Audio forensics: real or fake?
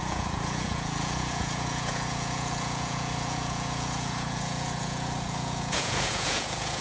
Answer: fake